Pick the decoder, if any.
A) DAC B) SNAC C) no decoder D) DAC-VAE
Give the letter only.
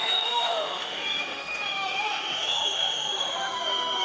D